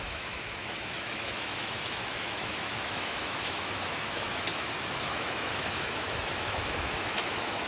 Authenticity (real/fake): fake